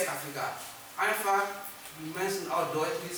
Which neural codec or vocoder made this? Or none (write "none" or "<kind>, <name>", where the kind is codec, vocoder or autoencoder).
none